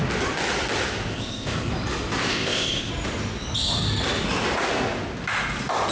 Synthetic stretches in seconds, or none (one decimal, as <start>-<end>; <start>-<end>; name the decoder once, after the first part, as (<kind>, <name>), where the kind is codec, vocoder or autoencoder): 1.1-1.7 (codec, ZipCodec); 2.3-2.9